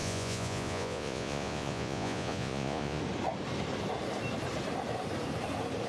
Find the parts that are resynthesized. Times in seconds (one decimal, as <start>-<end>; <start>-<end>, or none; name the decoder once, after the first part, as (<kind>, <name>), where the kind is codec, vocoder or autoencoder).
0.0-3.0 (vocoder, Vocos)